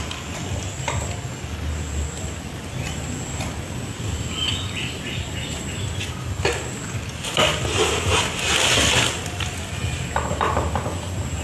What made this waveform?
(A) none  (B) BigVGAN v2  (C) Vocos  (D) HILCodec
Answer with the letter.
A